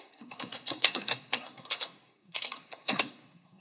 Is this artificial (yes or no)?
yes